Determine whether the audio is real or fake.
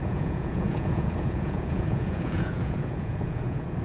fake